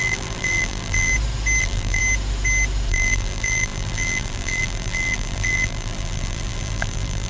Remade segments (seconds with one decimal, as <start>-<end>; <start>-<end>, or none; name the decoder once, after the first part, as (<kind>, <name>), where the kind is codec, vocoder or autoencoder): 0.0-1.1 (vocoder, BigVGAN v2); 1.6-2.0; 2.9-7.3